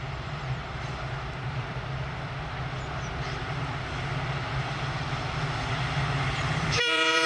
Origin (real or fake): fake